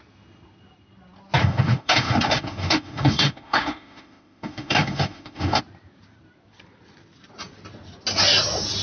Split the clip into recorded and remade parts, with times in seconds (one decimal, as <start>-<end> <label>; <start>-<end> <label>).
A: 0.0-1.4 recorded; 1.4-5.6 remade; 5.6-8.8 recorded